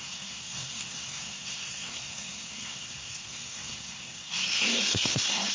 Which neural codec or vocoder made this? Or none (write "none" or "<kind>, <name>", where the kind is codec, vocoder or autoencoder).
codec, SNAC